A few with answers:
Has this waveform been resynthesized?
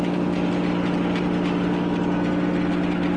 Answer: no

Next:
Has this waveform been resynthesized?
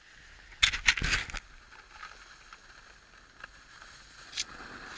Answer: no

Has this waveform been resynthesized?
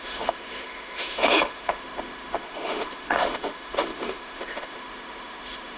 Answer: yes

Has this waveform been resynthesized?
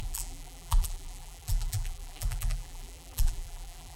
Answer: yes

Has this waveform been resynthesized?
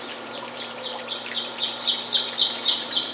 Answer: yes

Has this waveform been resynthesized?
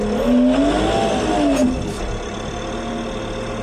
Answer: no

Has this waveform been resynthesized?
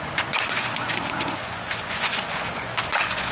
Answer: yes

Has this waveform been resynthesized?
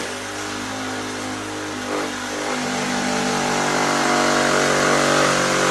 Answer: no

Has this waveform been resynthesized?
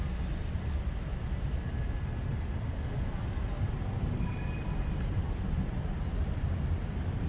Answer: no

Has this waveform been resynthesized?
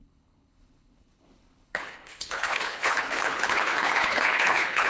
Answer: yes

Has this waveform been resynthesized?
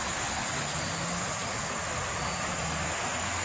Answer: no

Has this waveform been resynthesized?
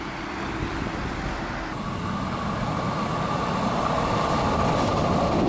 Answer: no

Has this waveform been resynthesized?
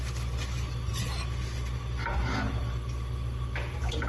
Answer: no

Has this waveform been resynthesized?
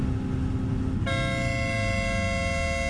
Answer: no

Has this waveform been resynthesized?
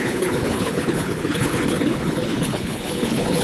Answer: yes